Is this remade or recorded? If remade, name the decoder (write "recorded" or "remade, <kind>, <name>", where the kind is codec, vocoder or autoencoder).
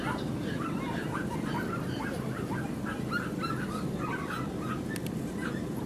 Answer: recorded